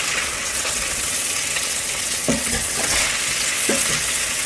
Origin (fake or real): fake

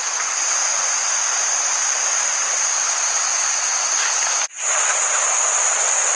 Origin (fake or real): real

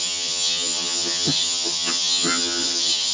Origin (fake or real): fake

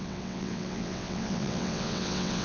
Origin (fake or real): fake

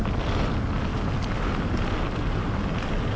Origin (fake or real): real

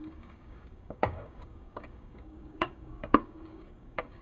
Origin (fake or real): fake